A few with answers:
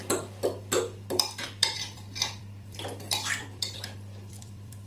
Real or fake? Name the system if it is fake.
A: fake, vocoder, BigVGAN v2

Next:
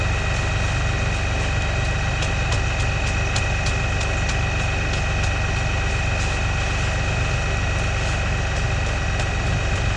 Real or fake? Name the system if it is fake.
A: real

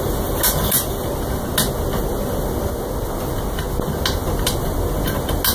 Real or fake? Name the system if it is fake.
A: real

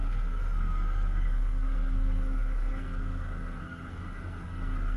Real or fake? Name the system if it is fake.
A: fake, codec, SNAC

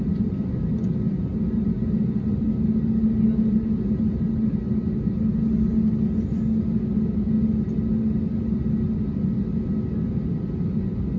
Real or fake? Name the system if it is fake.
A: real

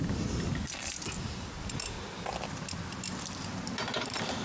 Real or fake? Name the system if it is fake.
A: real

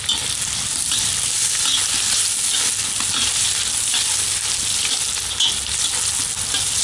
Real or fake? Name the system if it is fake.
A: real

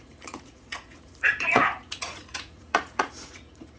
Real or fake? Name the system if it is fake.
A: fake, vocoder, Vocos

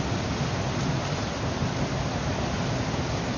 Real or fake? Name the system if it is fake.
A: real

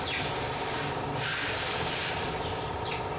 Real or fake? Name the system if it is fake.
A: fake, vocoder, BigVGAN v2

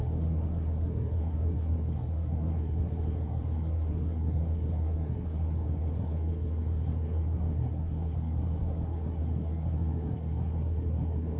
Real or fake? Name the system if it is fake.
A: fake, codec, SNAC